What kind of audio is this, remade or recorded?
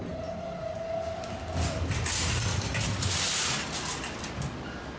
recorded